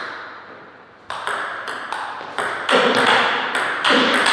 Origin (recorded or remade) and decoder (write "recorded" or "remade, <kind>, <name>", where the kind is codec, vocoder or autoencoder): recorded